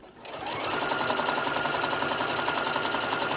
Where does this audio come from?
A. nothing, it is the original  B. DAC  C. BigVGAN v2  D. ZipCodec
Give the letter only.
A